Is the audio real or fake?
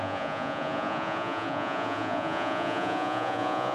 fake